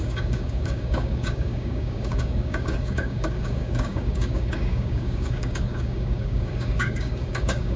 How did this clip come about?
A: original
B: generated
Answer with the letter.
B